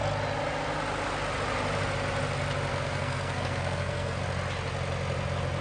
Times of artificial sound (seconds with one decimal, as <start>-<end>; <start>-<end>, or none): 2.7-4.2